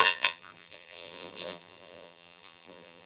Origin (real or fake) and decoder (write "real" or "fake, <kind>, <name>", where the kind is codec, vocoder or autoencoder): fake, vocoder, BigVGAN v2